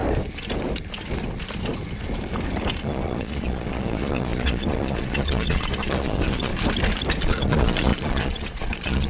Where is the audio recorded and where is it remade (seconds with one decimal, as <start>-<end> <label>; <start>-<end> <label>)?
0.0-2.8 recorded; 2.8-6.5 remade; 6.5-7.2 recorded; 7.2-9.1 remade